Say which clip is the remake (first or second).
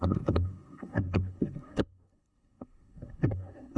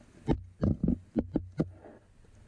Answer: first